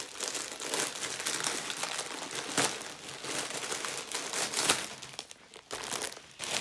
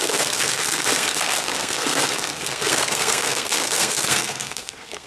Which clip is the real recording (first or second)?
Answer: first